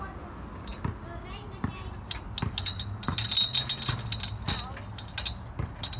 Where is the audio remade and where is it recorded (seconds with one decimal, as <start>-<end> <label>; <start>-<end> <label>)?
0.0-6.0 recorded